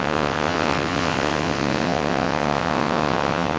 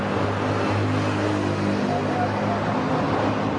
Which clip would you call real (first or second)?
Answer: second